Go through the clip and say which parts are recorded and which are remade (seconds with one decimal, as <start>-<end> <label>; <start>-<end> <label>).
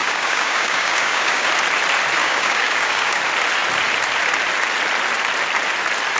0.0-1.5 remade; 1.5-2.2 recorded; 2.2-3.2 remade; 3.2-6.2 recorded